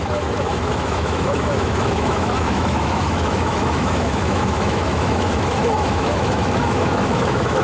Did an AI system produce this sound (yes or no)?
yes